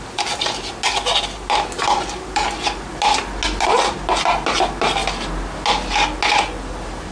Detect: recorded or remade recorded